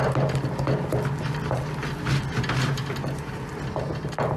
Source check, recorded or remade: recorded